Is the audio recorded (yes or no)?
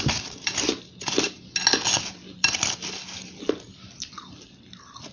yes